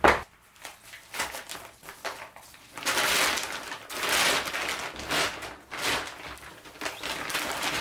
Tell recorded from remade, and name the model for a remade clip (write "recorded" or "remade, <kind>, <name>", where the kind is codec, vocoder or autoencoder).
recorded